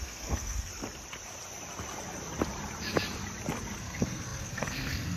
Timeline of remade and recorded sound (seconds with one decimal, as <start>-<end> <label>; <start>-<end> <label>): 0.0-0.7 remade; 0.7-3.8 recorded; 3.8-5.2 remade